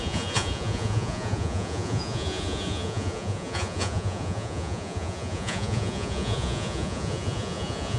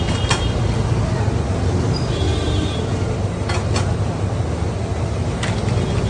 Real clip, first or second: second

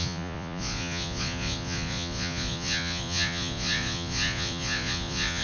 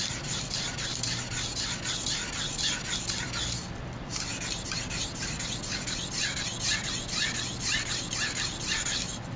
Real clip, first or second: second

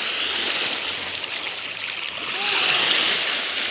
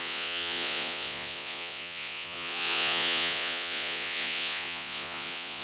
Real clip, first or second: first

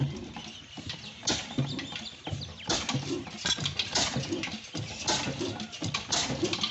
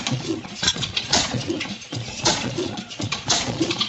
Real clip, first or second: first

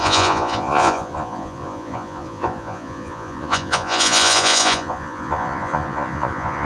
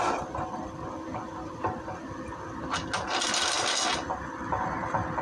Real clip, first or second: second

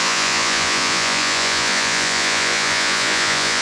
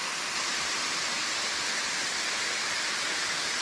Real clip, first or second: second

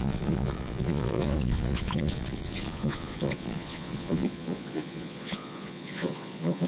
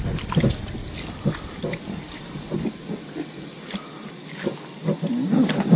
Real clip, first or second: second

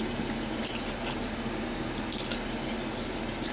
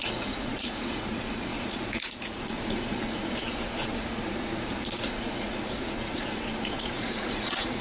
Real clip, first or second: first